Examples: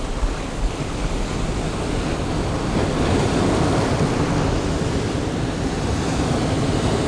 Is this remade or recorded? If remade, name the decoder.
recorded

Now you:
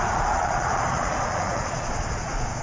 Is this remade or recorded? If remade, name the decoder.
remade, vocoder, Vocos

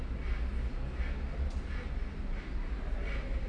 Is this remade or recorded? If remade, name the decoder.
recorded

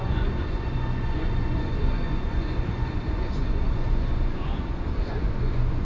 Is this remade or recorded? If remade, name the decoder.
remade, vocoder, Vocos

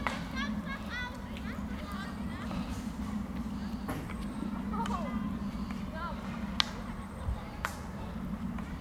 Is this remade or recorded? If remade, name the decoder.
recorded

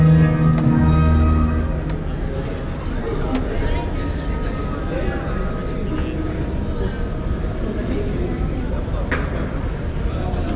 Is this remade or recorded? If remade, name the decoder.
recorded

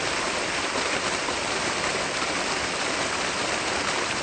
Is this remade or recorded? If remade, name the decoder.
recorded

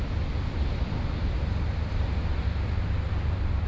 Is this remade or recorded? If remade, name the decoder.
recorded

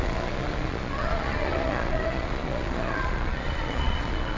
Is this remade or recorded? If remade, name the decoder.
remade, vocoder, Vocos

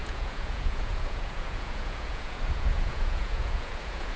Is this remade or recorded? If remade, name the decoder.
remade, vocoder, Vocos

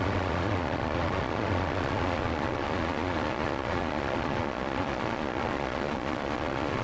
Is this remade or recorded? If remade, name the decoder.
remade, vocoder, Vocos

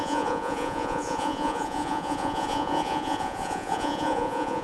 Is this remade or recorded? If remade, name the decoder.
remade, vocoder, Vocos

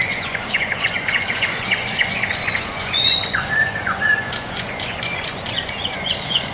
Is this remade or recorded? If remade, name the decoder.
remade, vocoder, Vocos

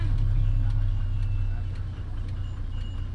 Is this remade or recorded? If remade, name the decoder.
recorded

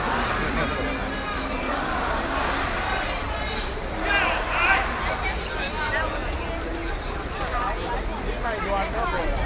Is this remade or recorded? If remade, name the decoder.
recorded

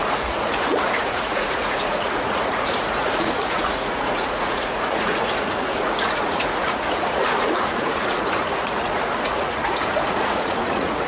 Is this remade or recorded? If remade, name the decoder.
remade, vocoder, Vocos